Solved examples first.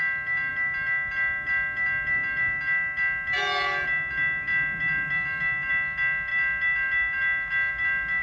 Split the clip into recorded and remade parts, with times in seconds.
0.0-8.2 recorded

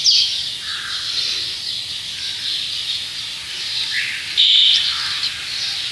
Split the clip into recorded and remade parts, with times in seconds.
0.0-5.9 recorded

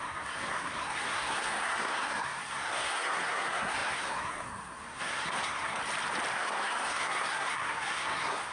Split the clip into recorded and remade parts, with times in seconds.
0.0-5.8 remade; 5.8-6.3 recorded; 6.3-8.5 remade